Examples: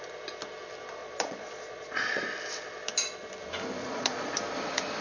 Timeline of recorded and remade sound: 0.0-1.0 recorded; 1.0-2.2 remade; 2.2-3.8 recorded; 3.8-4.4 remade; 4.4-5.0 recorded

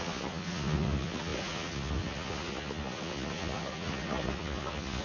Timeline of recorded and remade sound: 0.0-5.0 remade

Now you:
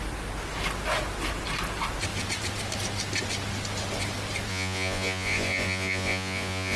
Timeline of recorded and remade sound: 0.0-4.5 recorded; 4.5-6.8 remade

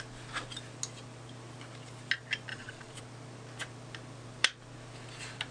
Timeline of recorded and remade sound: 0.0-2.5 recorded; 2.5-3.0 remade; 3.0-5.5 recorded

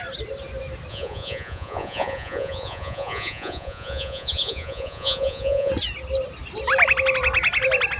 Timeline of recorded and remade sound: 0.0-0.9 recorded; 0.9-5.7 remade; 5.7-8.0 recorded